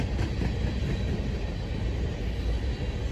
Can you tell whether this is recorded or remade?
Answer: recorded